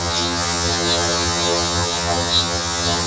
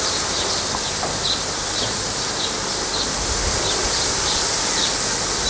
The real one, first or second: second